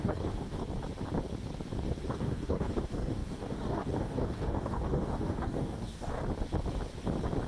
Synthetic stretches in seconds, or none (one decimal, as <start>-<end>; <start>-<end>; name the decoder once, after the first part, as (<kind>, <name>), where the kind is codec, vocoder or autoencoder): 0.0-0.6 (codec, DAC); 2.1-6.2